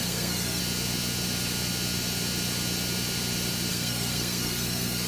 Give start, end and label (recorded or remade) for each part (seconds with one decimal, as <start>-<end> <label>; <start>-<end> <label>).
0.0-0.6 remade; 0.6-3.7 recorded; 3.7-5.1 remade